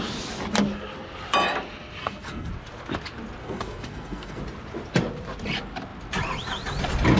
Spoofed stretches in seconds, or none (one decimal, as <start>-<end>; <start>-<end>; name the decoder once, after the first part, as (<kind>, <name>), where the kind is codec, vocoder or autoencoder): 2.0-2.5 (codec, SNAC); 3.4-4.4